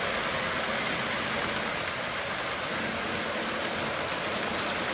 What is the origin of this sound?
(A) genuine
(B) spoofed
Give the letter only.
A